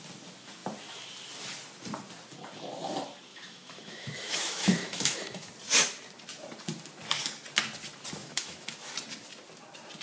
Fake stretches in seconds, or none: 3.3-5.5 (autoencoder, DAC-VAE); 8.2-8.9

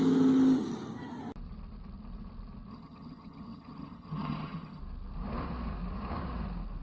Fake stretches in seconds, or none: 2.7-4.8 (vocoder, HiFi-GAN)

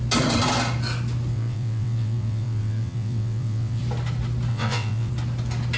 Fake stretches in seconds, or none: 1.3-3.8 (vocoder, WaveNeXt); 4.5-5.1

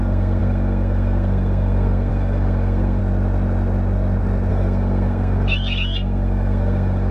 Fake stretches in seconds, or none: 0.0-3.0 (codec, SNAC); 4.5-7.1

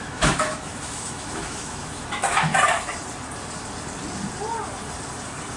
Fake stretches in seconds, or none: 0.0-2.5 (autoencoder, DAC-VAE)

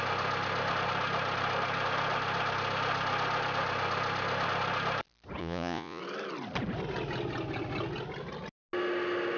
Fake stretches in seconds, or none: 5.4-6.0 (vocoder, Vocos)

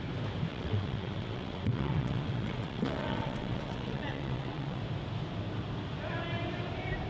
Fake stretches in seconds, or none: 0.5-4.8 (vocoder, WaveNeXt)